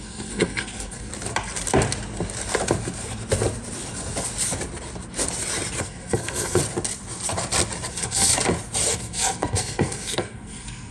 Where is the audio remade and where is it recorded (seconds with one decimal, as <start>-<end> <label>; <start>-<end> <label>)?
0.0-1.1 remade; 1.1-5.8 recorded; 5.8-6.6 remade; 6.6-7.9 recorded; 7.9-8.3 remade; 8.3-8.9 recorded; 8.9-10.9 remade